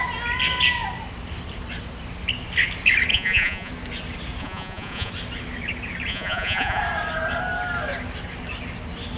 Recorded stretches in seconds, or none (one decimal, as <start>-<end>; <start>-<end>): 0.0-3.1; 3.7-4.4; 5.1-6.1; 6.8-9.2